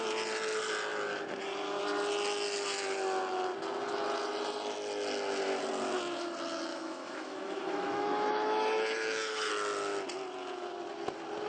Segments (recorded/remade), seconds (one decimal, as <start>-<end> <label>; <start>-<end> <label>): 0.0-6.7 recorded; 6.7-9.5 remade; 9.5-11.5 recorded